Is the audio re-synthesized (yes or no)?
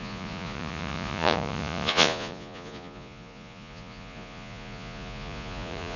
yes